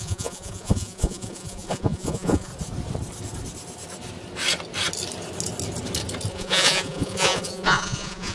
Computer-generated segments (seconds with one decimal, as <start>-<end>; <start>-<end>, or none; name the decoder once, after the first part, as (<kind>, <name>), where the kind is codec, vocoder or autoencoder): 0.0-2.5 (vocoder, Vocos); 6.3-8.3